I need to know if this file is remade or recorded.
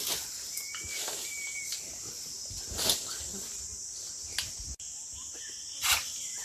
recorded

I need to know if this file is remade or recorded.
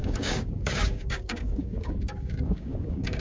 remade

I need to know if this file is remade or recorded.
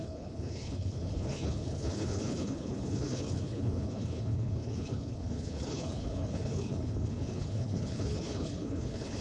remade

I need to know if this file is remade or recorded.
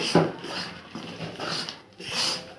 remade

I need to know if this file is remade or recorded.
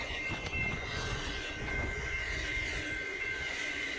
remade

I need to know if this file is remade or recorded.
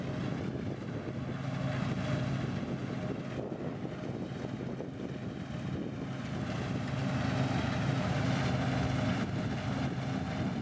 recorded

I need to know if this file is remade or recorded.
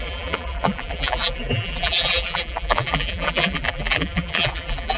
remade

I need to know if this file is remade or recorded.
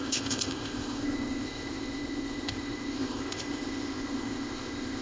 remade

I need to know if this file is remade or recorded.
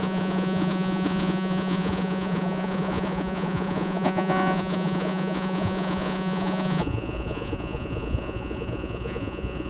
remade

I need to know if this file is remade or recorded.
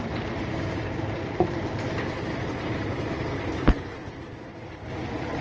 remade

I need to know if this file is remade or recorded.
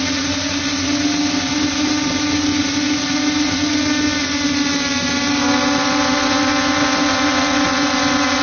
recorded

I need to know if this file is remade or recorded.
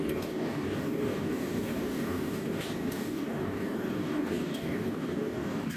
remade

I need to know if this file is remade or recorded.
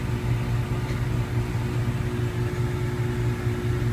recorded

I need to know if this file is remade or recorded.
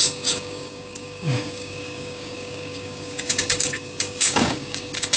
remade